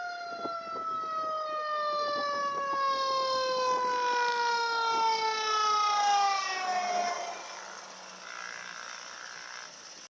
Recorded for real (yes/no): yes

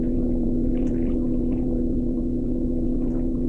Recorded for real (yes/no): yes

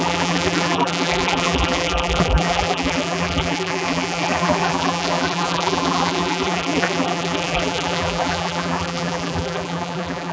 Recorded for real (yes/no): no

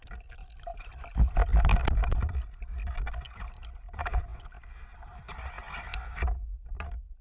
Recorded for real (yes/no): yes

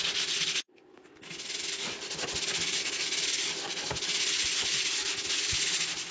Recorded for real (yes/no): yes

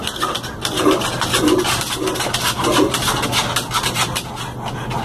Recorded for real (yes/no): yes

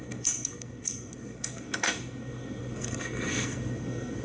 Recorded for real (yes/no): no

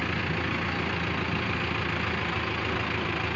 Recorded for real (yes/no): yes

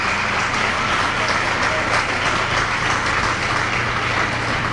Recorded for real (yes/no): yes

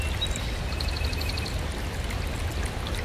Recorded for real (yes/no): yes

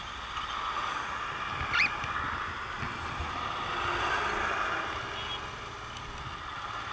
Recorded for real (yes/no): yes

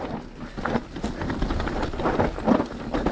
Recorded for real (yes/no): yes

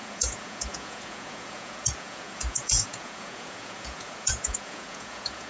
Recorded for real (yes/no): no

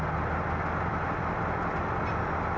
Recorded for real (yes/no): yes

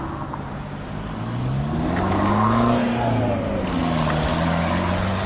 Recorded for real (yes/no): yes